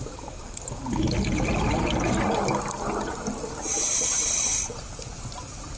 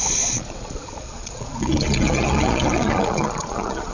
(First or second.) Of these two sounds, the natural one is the first